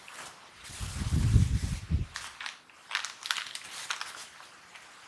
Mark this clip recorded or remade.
recorded